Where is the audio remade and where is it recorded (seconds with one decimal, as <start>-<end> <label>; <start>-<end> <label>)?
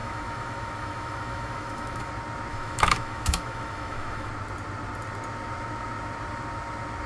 0.0-2.1 remade; 2.1-2.5 recorded; 2.5-4.3 remade; 4.3-7.1 recorded